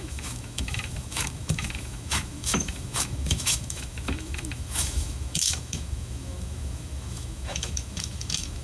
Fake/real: fake